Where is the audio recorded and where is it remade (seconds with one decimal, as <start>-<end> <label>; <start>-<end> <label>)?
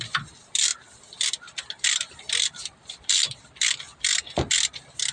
0.0-5.1 recorded